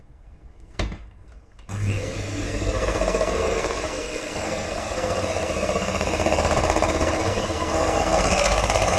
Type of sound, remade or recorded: remade